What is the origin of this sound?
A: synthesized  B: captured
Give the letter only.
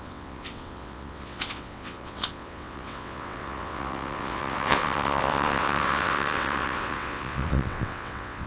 A